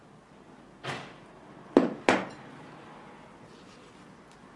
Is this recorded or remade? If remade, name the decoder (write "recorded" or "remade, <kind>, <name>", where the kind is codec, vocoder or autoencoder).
recorded